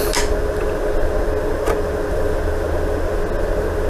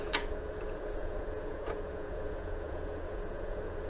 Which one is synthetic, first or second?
second